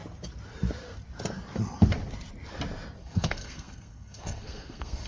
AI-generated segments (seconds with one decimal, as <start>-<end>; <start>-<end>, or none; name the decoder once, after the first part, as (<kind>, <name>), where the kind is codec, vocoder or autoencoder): 3.0-5.1 (codec, SNAC)